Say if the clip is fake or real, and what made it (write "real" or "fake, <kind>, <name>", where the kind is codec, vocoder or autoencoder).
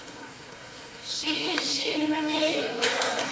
fake, codec, SNAC